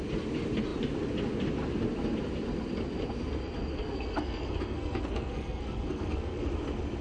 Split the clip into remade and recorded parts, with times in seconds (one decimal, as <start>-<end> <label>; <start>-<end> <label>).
0.0-3.7 recorded; 3.7-6.5 remade; 6.5-7.0 recorded